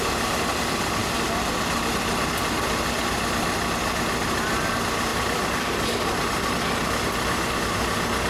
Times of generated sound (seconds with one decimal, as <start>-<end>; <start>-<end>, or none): none